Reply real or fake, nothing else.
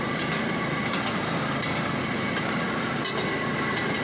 real